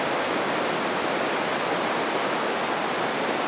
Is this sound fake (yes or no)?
no